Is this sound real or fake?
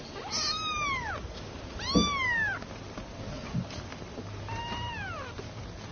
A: real